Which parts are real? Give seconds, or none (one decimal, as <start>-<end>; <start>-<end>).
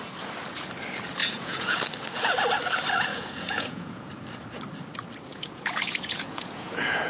0.0-1.2; 1.8-3.1; 4.1-5.3